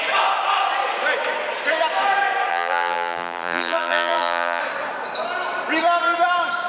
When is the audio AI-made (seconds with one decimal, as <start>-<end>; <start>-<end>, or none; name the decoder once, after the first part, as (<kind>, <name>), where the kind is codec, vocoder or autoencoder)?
2.5-4.6 (vocoder, BigVGAN v2)